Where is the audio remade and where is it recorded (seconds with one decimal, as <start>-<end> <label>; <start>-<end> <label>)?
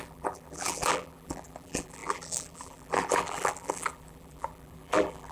0.0-5.3 remade